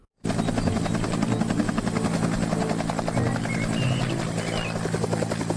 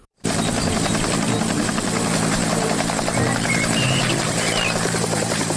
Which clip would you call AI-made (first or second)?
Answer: second